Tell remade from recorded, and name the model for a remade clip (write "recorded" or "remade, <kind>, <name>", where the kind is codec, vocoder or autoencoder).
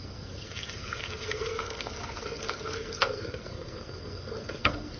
remade, codec, SNAC